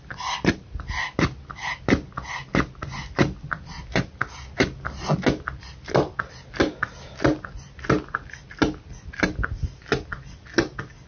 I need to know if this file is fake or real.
real